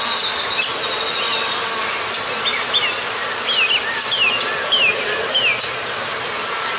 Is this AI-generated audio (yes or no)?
no